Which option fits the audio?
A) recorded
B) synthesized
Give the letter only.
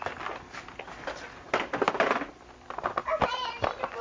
A